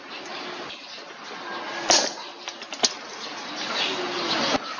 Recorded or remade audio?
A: recorded